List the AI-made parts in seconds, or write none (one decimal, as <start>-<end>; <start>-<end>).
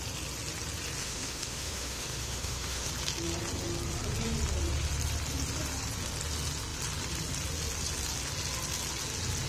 1.0-2.9